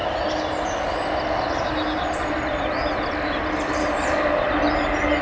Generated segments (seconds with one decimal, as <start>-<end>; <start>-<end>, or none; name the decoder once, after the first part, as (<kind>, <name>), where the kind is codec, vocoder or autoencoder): none